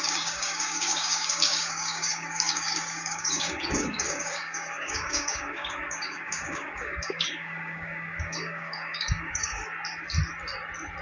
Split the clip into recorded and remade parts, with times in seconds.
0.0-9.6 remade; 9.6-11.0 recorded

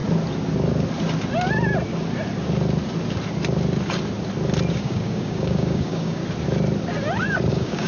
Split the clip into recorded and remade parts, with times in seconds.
0.0-4.7 recorded; 4.7-6.2 remade; 6.2-7.5 recorded; 7.5-7.9 remade

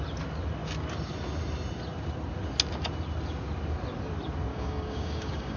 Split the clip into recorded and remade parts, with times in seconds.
0.0-4.5 recorded; 4.5-5.6 remade

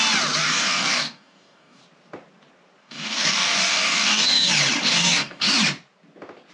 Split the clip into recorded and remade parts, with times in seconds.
0.0-0.4 recorded; 0.4-1.8 remade; 1.8-2.8 recorded; 2.8-4.5 remade; 4.5-4.9 recorded; 4.9-5.5 remade; 5.5-6.5 recorded

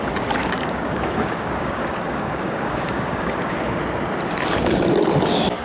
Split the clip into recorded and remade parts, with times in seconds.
0.0-0.4 recorded; 0.4-3.8 remade; 3.8-5.6 recorded